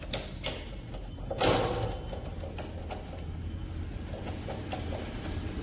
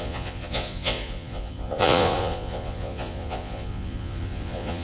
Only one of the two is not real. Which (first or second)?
second